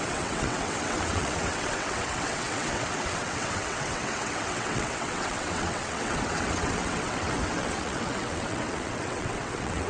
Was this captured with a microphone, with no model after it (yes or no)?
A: no